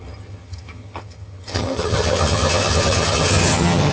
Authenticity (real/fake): fake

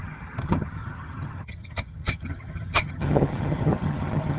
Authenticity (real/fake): fake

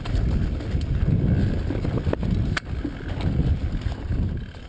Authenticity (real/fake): real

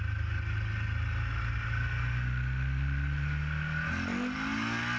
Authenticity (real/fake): real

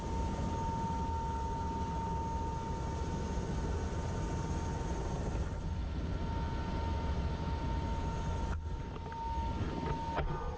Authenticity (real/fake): real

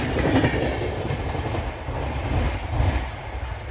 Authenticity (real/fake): real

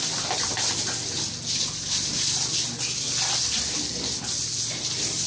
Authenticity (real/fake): real